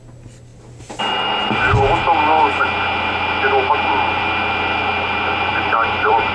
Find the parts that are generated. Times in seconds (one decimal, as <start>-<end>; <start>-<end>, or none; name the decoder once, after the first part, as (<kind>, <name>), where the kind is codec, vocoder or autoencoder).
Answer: 5.5-6.3 (vocoder, BigVGAN v2)